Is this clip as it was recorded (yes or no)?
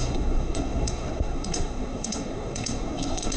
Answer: no